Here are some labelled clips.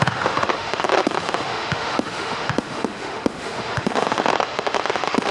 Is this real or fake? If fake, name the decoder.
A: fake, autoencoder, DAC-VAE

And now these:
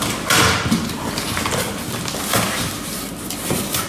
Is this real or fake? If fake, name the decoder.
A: real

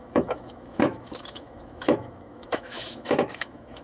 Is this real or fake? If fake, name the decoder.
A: fake, autoencoder, DAC-VAE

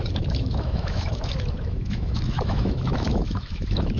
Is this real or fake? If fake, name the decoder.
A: fake, autoencoder, DAC-VAE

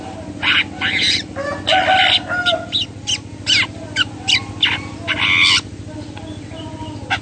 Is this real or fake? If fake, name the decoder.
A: real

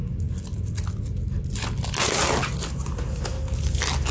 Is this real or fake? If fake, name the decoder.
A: real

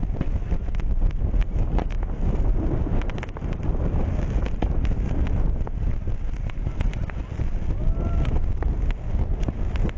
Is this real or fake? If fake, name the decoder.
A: real